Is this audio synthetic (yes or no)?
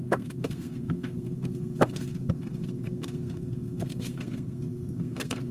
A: yes